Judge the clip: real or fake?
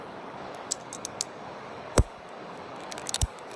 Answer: fake